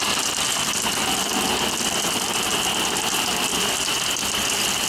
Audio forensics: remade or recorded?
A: recorded